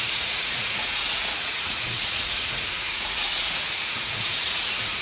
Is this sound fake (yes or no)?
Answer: yes